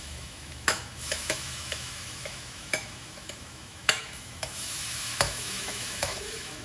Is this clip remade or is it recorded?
remade